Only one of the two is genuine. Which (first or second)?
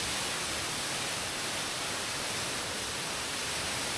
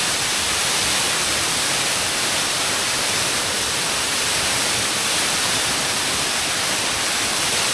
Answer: first